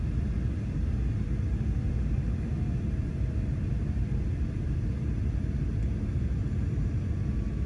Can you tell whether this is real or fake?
fake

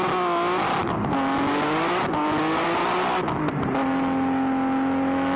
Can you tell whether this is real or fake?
real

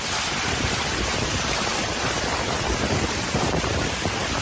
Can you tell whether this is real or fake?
fake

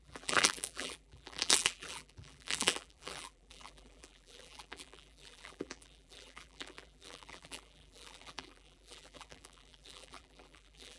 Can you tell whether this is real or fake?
fake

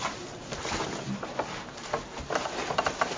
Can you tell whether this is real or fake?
fake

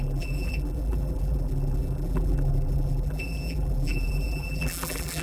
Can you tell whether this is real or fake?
fake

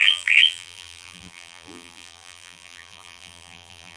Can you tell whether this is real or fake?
fake